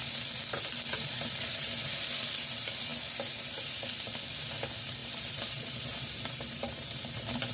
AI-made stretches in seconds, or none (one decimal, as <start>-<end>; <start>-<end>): 0.9-1.4; 5.0-7.5